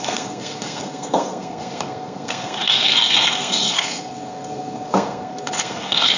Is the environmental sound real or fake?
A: fake